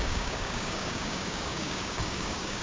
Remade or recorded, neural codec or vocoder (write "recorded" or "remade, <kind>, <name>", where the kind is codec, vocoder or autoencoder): remade, codec, DAC